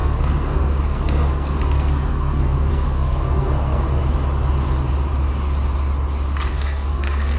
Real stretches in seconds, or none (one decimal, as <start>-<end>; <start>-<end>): 4.0-6.5